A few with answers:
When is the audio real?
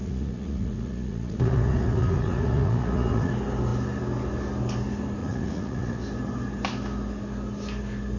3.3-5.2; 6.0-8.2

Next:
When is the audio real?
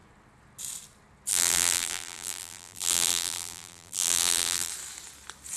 0.0-1.3; 4.7-5.6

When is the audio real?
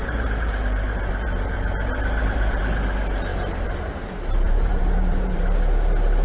2.6-3.3; 5.4-6.2